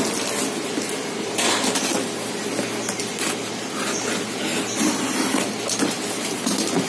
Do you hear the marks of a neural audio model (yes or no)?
no